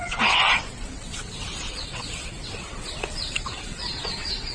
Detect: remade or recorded remade